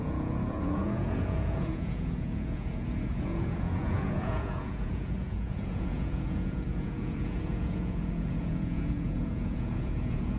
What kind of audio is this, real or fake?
fake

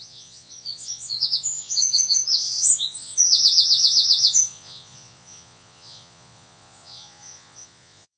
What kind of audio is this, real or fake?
fake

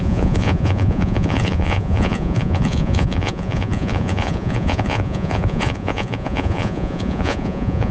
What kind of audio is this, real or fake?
fake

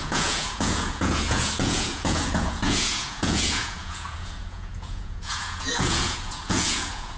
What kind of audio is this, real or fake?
fake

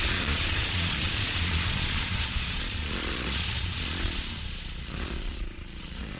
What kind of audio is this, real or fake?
fake